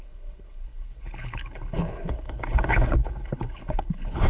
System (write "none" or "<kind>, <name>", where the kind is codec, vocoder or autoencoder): codec, HILCodec